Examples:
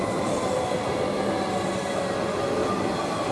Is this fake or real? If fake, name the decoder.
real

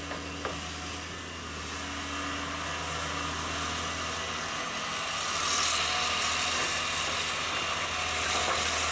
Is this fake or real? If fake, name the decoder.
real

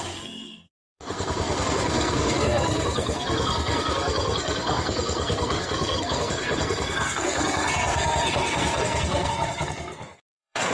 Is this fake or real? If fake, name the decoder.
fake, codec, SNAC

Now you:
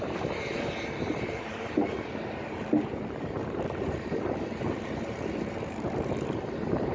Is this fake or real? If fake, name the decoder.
fake, vocoder, BigVGAN v2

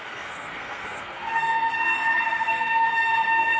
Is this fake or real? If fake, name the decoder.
fake, codec, SNAC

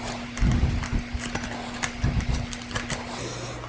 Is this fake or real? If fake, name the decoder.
real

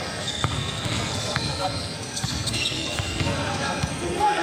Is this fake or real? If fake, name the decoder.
fake, codec, SNAC